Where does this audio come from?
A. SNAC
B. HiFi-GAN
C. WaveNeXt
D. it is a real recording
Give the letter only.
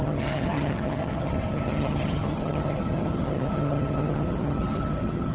B